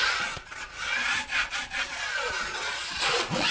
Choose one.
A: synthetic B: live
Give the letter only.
A